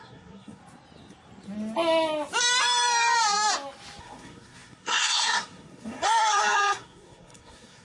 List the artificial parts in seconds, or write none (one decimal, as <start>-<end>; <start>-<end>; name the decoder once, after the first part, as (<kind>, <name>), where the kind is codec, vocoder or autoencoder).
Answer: 0.0-0.6 (codec, SNAC); 4.0-7.8